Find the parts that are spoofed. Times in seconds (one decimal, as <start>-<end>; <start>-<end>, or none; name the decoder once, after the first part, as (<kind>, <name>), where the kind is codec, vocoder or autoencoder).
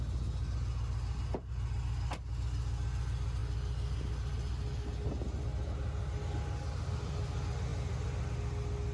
none